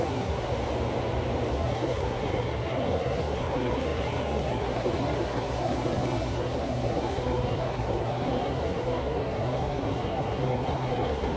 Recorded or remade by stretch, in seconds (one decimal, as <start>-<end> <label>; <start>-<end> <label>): 0.0-0.5 remade; 0.5-1.5 recorded; 1.5-11.4 remade